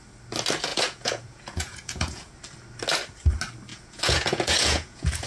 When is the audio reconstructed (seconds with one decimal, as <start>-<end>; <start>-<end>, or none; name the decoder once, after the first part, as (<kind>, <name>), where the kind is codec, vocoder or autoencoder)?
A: 0.7-2.3 (vocoder, Vocos); 3.7-5.3

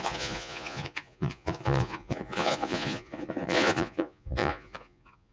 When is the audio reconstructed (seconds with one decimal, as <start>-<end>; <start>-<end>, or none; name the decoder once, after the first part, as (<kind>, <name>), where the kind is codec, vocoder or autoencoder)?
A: 0.0-5.3 (vocoder, Vocos)